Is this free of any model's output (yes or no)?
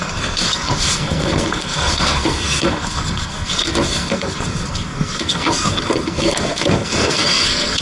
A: no